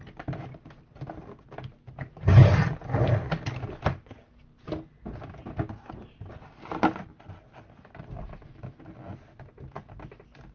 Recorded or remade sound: recorded